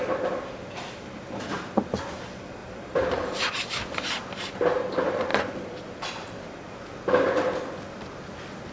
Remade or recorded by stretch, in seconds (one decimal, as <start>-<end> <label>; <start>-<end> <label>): 0.0-2.6 recorded; 2.6-3.5 remade; 3.5-5.3 recorded; 5.3-6.1 remade; 6.1-8.7 recorded